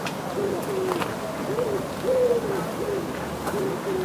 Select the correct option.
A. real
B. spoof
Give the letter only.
A